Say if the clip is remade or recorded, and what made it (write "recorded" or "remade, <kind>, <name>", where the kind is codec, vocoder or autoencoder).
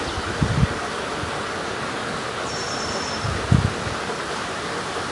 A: recorded